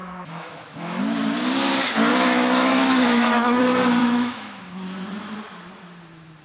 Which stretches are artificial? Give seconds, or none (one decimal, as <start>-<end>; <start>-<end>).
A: 0.0-1.0; 2.1-3.6; 4.0-4.6